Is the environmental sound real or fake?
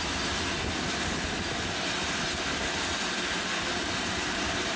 real